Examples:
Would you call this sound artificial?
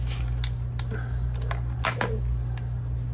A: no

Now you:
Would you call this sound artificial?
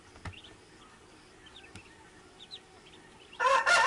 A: no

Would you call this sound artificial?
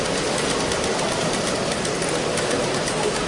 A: no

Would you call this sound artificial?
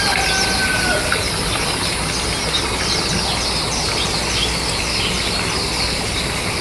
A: no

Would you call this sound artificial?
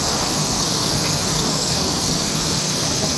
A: yes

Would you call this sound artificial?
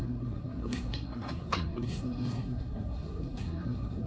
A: yes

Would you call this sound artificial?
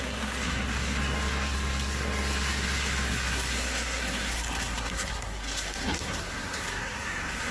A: yes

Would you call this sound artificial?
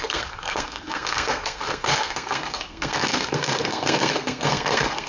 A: yes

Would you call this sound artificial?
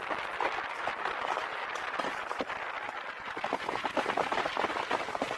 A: no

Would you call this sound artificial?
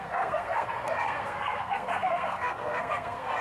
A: yes